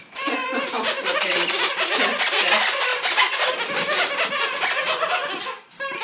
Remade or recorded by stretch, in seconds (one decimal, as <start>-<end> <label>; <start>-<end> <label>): 0.0-0.4 recorded; 0.4-1.7 remade; 1.7-6.0 recorded